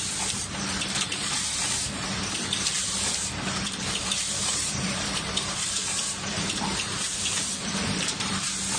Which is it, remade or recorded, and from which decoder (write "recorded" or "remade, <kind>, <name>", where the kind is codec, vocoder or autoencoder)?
remade, vocoder, BigVGAN v2